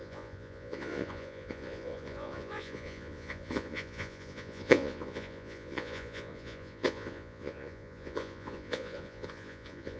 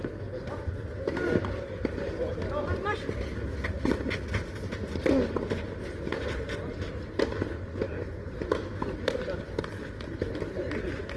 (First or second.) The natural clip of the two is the second